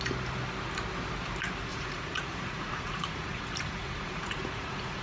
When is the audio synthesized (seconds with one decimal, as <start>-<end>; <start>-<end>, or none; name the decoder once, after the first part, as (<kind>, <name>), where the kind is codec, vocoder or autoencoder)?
1.7-5.0 (vocoder, Vocos)